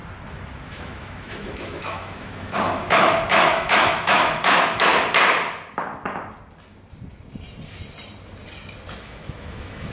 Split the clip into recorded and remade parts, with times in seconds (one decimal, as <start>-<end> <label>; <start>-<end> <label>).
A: 0.0-0.7 recorded; 0.7-4.9 remade; 4.9-9.0 recorded; 9.0-9.9 remade